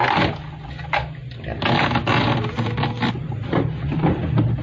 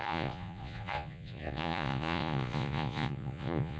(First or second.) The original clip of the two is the first